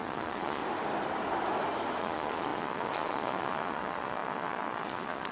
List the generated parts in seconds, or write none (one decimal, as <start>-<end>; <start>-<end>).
0.0-0.6; 2.0-5.3